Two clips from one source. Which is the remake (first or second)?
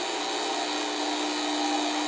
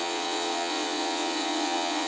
second